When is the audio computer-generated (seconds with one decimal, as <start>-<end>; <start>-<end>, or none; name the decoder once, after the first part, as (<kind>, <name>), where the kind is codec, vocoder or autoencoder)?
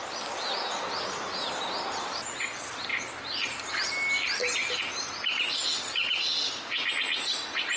none